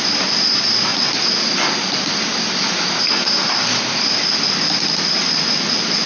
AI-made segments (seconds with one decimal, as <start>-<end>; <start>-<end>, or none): none

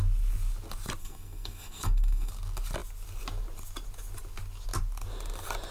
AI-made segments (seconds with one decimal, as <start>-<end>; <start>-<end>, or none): 1.0-2.3

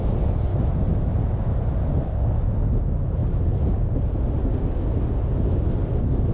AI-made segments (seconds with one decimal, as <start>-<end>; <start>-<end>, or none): 0.5-1.1

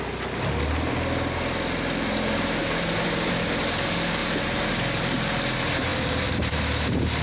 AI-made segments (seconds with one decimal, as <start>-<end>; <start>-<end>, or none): 2.6-3.3; 4.2-4.7

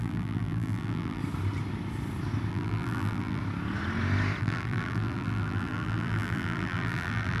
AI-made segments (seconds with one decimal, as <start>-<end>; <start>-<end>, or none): 0.0-1.2; 2.5-3.4; 4.4-7.4

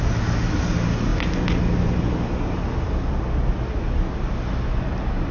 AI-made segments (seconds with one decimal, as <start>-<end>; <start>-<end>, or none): none